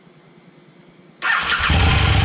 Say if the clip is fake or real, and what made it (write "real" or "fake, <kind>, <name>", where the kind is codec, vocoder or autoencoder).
real